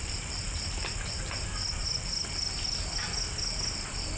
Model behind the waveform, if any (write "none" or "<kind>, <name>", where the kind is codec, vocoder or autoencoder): none